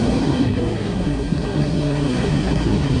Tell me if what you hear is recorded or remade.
remade